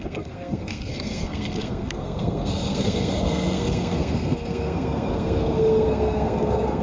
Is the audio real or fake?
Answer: fake